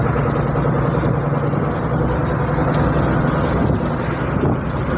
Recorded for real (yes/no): yes